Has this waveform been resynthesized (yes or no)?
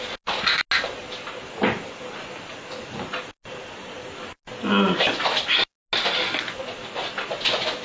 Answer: no